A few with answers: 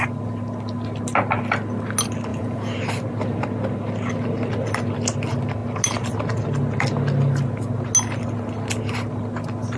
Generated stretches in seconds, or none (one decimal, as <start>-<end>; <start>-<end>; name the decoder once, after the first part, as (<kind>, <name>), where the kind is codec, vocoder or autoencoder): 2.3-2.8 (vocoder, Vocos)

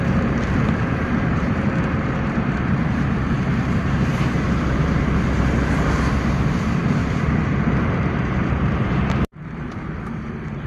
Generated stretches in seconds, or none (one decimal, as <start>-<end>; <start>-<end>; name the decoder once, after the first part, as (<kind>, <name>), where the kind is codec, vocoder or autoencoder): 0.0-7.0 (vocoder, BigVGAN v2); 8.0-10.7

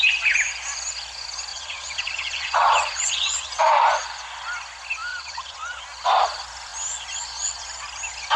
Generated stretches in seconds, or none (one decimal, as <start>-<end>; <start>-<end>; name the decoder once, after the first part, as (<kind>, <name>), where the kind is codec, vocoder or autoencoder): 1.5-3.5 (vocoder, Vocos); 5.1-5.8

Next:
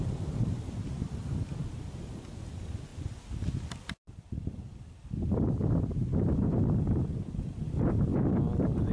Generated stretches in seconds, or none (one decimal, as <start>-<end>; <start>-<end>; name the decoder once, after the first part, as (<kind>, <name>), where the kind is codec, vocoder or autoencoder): 0.0-8.9 (vocoder, BigVGAN v2)

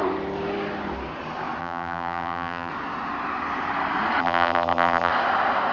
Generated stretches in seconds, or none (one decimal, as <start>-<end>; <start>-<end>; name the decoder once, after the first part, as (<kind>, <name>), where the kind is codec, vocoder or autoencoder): 1.6-2.7 (vocoder, BigVGAN v2); 4.2-5.1

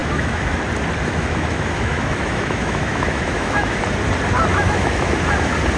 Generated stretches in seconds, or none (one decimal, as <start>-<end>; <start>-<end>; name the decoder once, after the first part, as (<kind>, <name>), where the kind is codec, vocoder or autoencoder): 0.0-0.6 (autoencoder, DAC-VAE); 1.0-3.8; 4.5-5.1

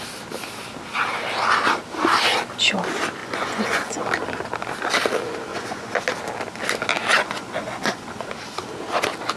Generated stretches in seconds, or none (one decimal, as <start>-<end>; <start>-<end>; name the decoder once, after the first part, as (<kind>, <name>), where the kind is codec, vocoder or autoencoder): 3.2-4.1 (vocoder, Vocos); 5.5-6.0; 7.1-8.3